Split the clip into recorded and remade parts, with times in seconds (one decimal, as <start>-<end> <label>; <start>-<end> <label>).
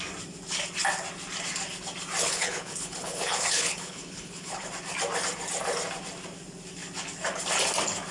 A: 0.0-2.2 recorded; 2.2-4.7 remade; 4.7-8.1 recorded